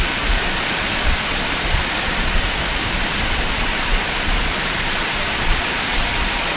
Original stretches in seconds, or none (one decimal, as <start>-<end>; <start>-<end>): none